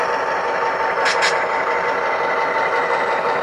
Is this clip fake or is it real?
fake